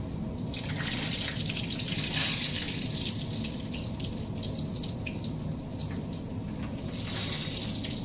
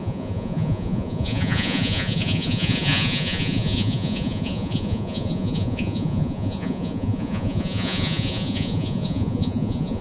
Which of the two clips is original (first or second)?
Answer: first